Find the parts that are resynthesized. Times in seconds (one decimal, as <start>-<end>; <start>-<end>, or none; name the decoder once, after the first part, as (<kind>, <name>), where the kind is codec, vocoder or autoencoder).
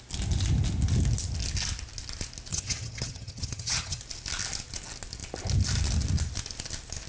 2.5-4.0 (vocoder, HiFi-GAN)